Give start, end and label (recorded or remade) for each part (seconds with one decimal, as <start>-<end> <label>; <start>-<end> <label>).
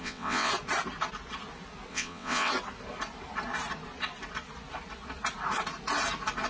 0.0-0.5 remade; 0.5-1.9 recorded; 1.9-2.5 remade; 2.5-6.5 recorded